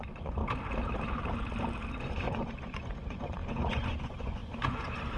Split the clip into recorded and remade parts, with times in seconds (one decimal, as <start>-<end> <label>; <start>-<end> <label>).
0.0-0.4 remade; 0.4-2.0 recorded; 2.0-5.2 remade